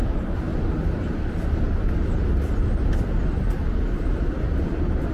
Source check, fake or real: real